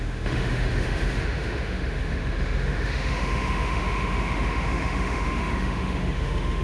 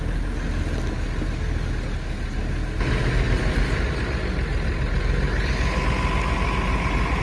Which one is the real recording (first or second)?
second